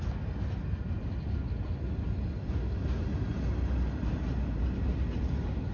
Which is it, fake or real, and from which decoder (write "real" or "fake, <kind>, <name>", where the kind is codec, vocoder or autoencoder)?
real